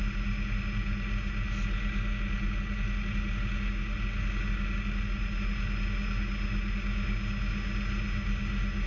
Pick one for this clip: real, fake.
real